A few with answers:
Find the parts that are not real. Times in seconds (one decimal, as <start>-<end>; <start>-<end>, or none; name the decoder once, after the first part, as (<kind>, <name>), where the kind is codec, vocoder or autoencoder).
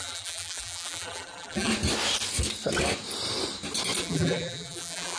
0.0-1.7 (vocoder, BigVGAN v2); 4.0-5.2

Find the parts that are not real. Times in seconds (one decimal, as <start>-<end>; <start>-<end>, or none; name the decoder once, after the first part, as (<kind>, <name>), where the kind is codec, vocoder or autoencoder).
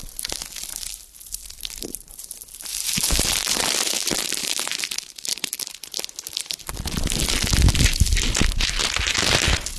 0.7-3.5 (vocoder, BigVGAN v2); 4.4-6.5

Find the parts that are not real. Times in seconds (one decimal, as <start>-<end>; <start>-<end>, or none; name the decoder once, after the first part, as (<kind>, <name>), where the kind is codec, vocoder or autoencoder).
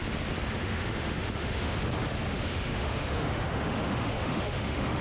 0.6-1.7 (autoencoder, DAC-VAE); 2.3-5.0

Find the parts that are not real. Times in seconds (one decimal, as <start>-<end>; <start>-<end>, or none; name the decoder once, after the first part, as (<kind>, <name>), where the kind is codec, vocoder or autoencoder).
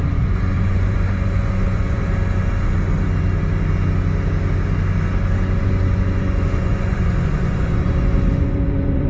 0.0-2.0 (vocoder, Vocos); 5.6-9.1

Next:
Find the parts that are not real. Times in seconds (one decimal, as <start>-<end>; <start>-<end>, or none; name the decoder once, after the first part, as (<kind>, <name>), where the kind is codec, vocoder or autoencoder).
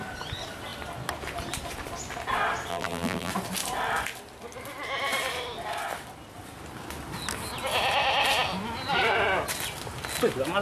2.7-3.3 (vocoder, BigVGAN v2)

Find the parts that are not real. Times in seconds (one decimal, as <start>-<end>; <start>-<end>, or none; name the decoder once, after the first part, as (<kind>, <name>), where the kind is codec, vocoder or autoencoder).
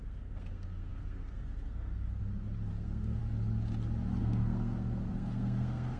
0.0-2.2 (codec, SNAC); 2.7-3.2; 4.2-6.0